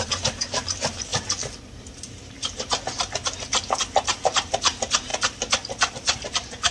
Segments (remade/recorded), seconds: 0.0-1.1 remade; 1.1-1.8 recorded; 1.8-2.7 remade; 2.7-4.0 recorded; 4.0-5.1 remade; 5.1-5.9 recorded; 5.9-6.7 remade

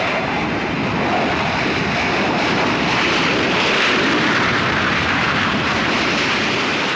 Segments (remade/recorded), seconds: 0.0-0.8 remade; 0.8-2.3 recorded; 2.3-7.0 remade

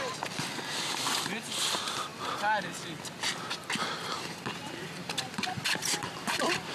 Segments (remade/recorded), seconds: 0.0-5.8 recorded; 5.8-6.7 remade

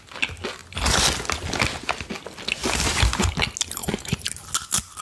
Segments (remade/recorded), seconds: 0.0-2.6 recorded; 2.6-3.4 remade; 3.4-3.8 recorded; 3.8-4.4 remade; 4.4-5.0 recorded

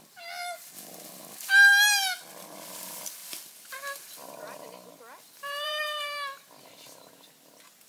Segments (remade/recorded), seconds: 0.0-3.2 recorded; 3.2-7.1 remade; 7.1-7.9 recorded